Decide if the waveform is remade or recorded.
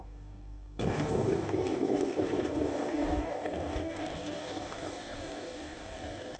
remade